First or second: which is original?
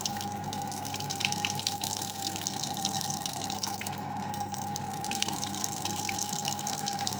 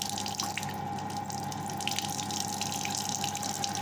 second